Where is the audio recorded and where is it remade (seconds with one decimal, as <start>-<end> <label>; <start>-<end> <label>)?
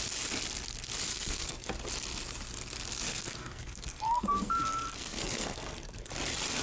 0.0-1.1 recorded; 1.1-1.7 remade; 1.7-3.1 recorded; 3.1-6.1 remade; 6.1-6.6 recorded